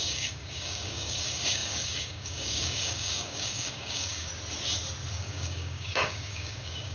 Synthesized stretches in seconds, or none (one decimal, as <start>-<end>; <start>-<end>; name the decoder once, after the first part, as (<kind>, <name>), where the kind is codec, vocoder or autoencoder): 0.0-4.3 (codec, DAC); 5.1-6.9